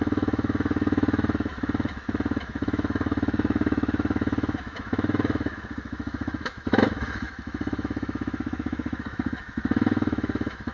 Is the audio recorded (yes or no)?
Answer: no